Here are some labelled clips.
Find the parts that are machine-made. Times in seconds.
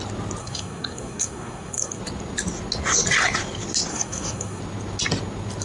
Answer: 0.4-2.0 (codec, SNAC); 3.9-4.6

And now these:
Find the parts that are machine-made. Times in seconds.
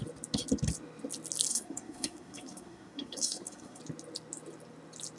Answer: 1.5-3.8 (codec, SNAC)